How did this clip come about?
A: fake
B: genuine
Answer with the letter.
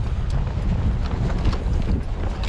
B